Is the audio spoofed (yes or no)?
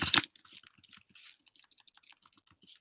no